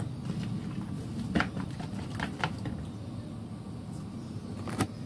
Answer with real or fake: real